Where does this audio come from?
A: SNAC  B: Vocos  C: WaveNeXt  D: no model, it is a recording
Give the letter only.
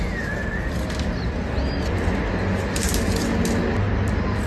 D